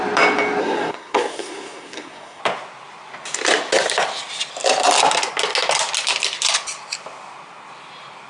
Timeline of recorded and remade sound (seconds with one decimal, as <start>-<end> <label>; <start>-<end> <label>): 0.0-0.6 recorded; 0.6-2.4 remade; 2.4-8.3 recorded